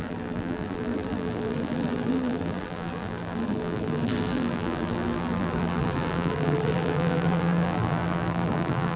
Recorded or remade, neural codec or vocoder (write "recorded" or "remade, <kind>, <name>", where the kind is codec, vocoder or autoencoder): remade, vocoder, BigVGAN v2